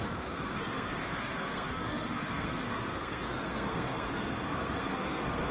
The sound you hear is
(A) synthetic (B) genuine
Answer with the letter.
A